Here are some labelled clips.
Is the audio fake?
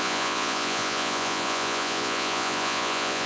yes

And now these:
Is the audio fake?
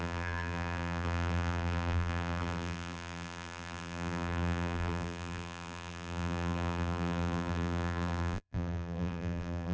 yes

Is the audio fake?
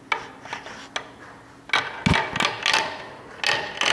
no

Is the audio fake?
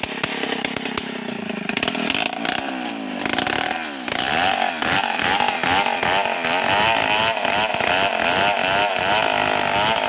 no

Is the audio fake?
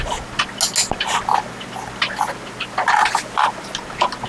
no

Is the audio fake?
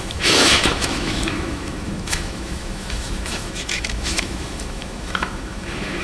yes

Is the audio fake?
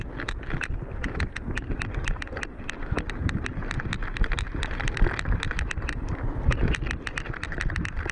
no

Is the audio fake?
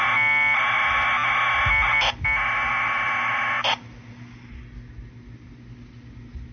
no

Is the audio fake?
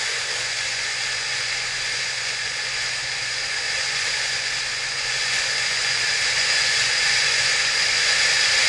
yes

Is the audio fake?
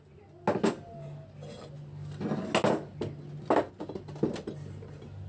no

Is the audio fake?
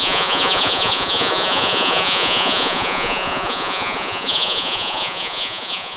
yes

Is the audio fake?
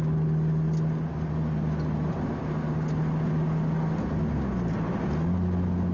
no